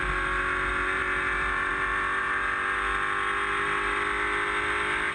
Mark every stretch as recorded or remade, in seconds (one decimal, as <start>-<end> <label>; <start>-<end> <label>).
0.0-5.1 recorded